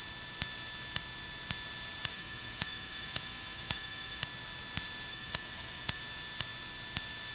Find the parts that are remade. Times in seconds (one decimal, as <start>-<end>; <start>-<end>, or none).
2.1-4.2; 5.1-6.0

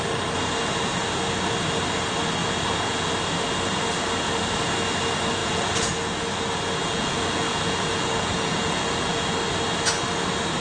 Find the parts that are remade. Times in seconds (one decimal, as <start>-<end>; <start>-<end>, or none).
2.4-3.1; 5.4-5.9; 6.8-9.2